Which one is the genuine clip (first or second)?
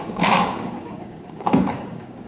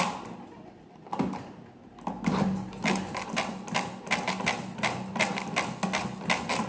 second